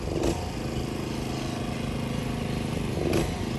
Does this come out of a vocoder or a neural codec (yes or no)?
no